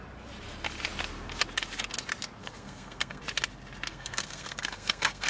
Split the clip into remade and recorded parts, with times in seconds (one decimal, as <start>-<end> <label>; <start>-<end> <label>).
0.0-2.4 recorded; 2.4-3.2 remade; 3.2-3.9 recorded; 3.9-5.3 remade